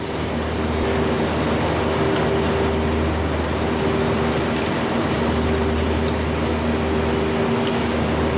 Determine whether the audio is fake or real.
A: real